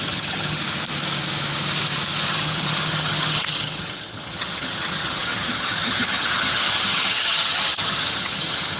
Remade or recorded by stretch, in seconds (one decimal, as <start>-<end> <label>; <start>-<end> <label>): 0.0-0.6 remade; 0.6-2.3 recorded; 2.3-8.8 remade